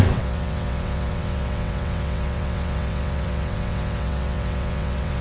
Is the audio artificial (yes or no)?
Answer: yes